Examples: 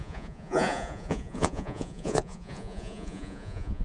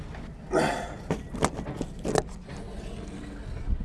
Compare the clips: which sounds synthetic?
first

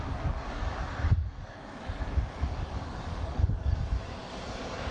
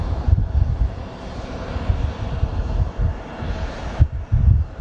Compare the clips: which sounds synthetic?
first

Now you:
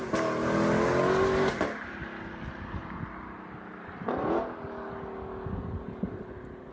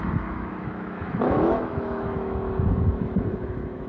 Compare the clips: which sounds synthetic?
second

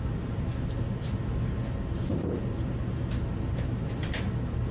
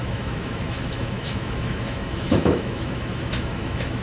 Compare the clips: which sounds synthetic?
second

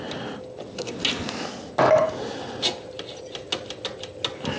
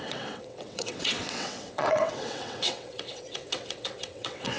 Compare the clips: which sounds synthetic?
second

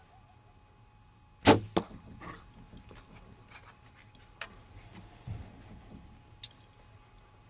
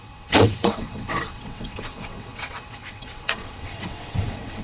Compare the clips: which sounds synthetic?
second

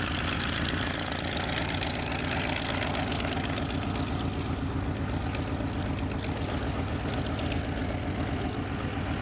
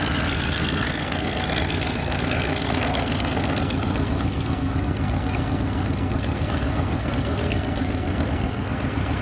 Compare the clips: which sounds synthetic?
second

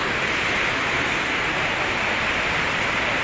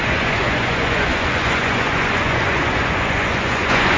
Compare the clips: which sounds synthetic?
second